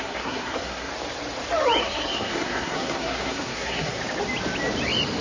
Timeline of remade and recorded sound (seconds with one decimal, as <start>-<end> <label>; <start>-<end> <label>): 0.0-0.9 remade; 0.9-1.8 recorded; 1.8-4.0 remade; 4.0-5.2 recorded

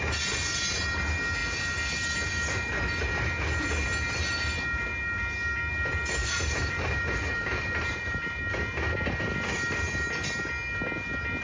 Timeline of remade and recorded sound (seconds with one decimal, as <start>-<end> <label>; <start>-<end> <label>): 0.0-6.2 recorded; 6.2-8.4 remade; 8.4-11.4 recorded

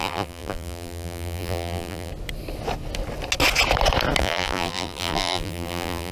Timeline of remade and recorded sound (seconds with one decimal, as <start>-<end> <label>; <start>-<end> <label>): 0.0-2.1 remade; 2.1-4.2 recorded; 4.2-6.1 remade

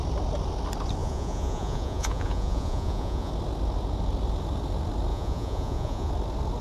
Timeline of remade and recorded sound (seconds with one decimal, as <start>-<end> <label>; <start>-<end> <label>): 0.0-1.0 recorded; 1.0-3.3 remade; 3.3-5.1 recorded; 5.1-6.1 remade; 6.1-6.6 recorded

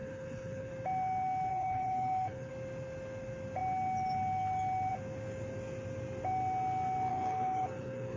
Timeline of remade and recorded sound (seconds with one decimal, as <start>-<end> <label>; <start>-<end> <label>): 0.0-0.7 remade; 0.7-1.5 recorded; 1.5-2.5 remade; 2.5-7.1 recorded; 7.1-8.2 remade

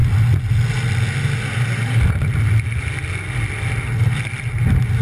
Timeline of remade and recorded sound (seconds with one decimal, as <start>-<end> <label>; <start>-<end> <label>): 0.0-5.0 recorded